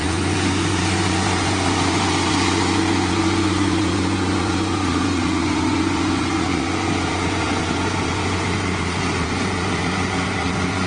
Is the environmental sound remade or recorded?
remade